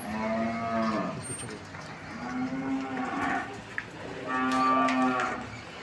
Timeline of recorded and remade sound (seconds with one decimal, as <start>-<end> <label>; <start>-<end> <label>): 0.0-5.8 recorded